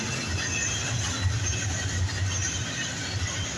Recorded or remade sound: recorded